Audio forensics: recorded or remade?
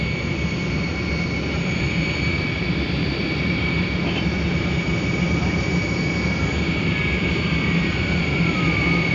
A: remade